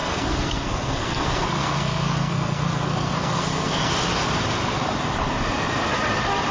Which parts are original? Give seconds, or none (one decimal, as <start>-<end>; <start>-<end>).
3.9-6.5